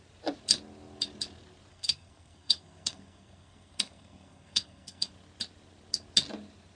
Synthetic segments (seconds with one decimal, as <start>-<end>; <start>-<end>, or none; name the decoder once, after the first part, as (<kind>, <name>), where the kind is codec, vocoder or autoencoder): 1.7-5.1 (codec, SNAC)